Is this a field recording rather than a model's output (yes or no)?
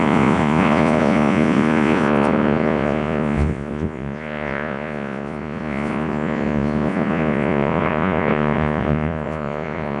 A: no